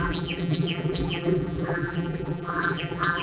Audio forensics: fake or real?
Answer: fake